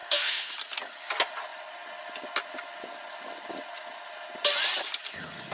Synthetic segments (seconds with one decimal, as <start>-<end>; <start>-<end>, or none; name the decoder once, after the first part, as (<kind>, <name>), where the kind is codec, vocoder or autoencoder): 0.0-0.5 (codec, SNAC)